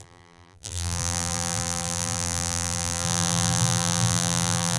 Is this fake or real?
fake